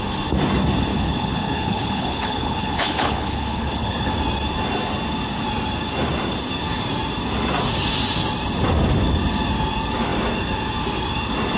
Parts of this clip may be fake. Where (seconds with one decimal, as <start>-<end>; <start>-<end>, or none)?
0.9-4.1